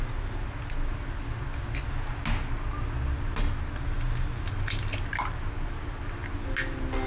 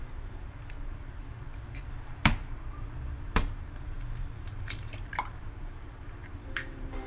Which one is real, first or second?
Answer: first